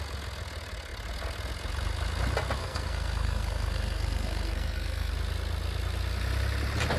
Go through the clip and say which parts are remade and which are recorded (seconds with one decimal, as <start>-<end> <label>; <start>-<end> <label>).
0.0-2.6 recorded; 2.6-5.1 remade; 5.1-7.0 recorded